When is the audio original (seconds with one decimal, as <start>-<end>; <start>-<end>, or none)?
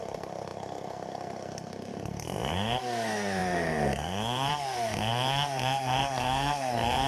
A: none